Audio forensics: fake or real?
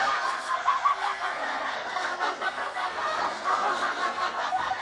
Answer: fake